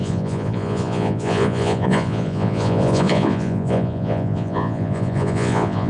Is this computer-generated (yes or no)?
yes